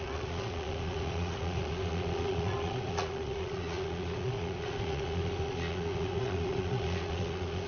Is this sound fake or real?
fake